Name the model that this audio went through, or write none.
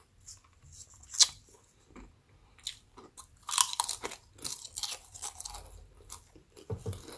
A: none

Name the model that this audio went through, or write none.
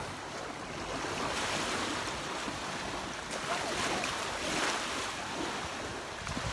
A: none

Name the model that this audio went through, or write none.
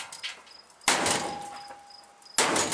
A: none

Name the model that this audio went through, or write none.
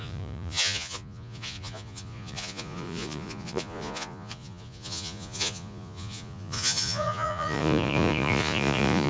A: vocoder, Vocos